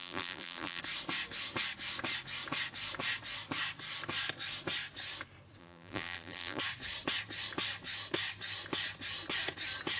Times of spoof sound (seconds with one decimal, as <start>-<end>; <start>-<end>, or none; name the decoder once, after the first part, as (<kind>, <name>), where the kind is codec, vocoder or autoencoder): 0.0-0.8 (vocoder, BigVGAN v2); 5.6-6.6

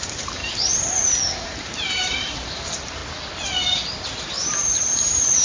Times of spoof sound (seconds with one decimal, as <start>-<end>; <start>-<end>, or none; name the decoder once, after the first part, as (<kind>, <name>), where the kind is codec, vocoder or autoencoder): 0.0-0.4 (vocoder, BigVGAN v2); 1.2-3.0; 4.2-5.4

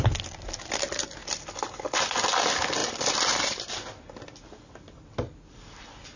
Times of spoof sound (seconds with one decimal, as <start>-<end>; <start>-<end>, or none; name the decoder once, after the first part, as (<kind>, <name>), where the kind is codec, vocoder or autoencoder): 1.2-2.0 (vocoder, BigVGAN v2); 2.8-3.7

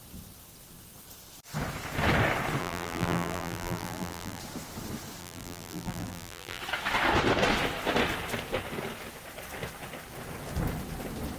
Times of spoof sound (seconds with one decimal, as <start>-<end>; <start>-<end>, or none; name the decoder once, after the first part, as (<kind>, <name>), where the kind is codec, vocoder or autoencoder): 2.6-4.4 (vocoder, BigVGAN v2); 5.2-6.6

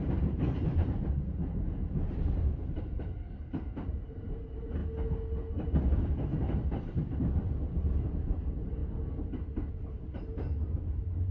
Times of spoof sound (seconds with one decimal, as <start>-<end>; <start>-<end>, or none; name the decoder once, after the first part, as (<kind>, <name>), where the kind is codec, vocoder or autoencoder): 0.0-4.8 (vocoder, BigVGAN v2); 6.0-8.8; 9.7-11.3

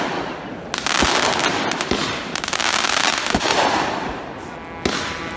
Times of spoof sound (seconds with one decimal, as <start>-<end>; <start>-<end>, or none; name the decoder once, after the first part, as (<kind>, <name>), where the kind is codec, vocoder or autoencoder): 2.0-2.6 (vocoder, BigVGAN v2); 3.5-4.2